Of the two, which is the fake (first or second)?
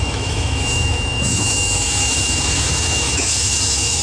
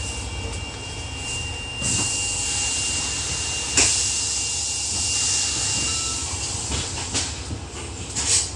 first